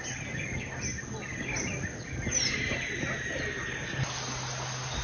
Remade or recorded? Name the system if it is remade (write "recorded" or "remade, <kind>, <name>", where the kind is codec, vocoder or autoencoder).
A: recorded